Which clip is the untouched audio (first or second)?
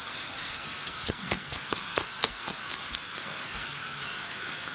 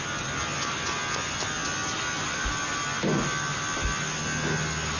second